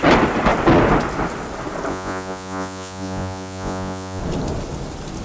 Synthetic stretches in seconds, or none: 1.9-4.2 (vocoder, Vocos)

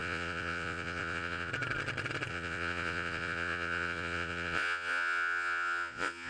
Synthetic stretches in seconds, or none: 0.0-1.5 (vocoder, Vocos); 2.3-6.3

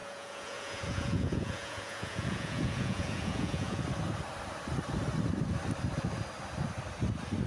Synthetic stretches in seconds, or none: 0.0-3.8 (vocoder, Vocos)

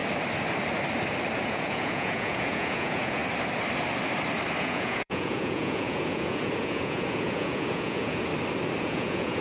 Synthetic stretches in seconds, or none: 1.5-3.2 (vocoder, Vocos); 4.6-8.3; 8.8-9.4